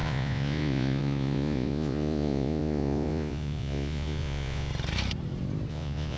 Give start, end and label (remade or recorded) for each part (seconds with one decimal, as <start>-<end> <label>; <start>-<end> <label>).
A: 0.0-4.7 remade; 4.7-5.7 recorded; 5.7-6.2 remade